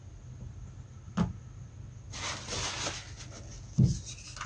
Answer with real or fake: real